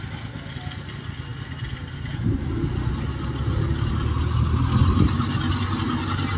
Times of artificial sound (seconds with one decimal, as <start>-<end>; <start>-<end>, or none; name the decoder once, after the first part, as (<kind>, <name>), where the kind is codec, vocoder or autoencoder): none